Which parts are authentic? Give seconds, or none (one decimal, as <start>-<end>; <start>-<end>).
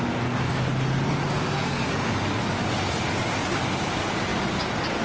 0.0-5.0